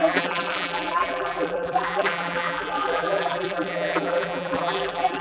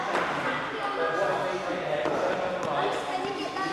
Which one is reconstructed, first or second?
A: first